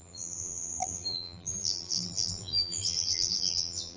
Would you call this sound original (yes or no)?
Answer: no